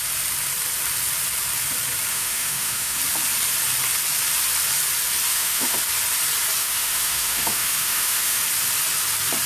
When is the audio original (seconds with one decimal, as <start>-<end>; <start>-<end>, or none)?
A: 0.0-2.1; 3.0-5.3; 5.8-6.6; 8.4-9.5